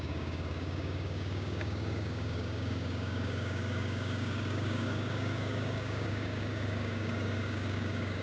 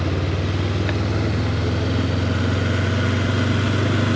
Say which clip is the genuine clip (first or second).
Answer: second